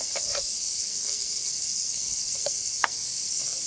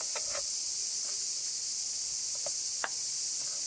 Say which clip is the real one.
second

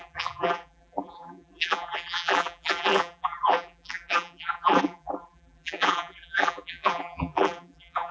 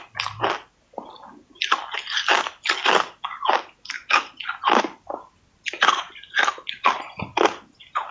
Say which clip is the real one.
second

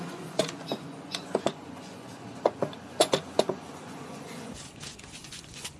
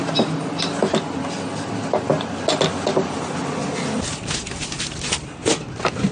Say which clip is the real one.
second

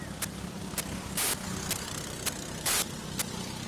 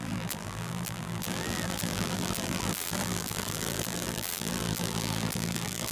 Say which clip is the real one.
first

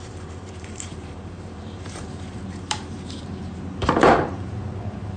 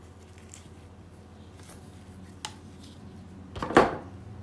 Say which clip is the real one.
second